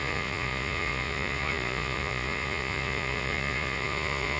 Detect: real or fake fake